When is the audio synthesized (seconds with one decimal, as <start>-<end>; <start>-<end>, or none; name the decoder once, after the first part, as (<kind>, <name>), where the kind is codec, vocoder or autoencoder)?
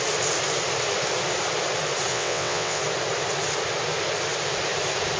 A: 2.1-2.8 (vocoder, WaveNeXt)